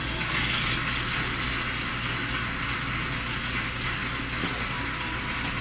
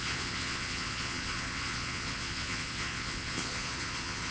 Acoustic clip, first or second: first